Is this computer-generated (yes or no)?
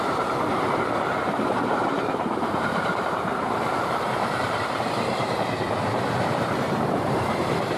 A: yes